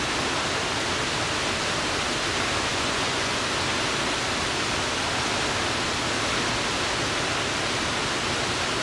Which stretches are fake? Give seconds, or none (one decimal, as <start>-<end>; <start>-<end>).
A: 2.7-3.4